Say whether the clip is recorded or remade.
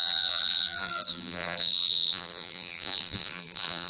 remade